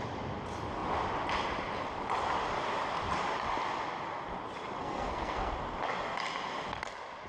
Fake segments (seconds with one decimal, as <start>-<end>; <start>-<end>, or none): 4.8-5.5